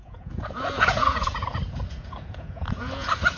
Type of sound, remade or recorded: remade